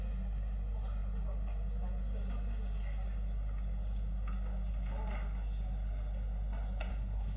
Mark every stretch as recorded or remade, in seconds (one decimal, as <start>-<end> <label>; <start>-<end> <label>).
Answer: 0.0-6.9 recorded; 6.9-7.4 remade